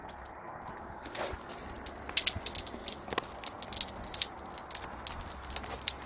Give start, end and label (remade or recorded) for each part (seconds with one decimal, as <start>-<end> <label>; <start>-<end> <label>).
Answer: 0.0-0.7 remade; 0.7-6.1 recorded